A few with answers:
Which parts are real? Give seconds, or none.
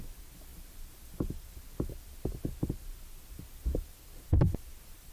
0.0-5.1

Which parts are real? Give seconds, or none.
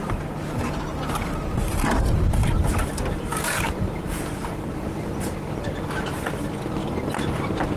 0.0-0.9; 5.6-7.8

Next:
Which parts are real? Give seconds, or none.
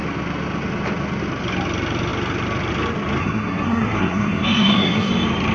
0.0-3.2; 5.1-5.5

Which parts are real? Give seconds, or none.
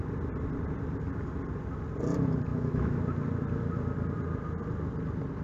0.0-2.5; 3.0-5.4